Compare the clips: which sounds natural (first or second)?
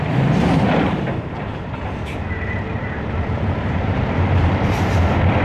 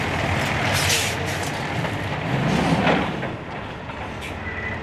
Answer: second